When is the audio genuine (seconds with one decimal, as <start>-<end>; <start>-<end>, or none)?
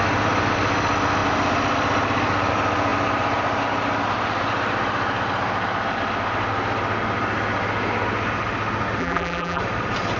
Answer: 0.0-9.0; 9.6-10.2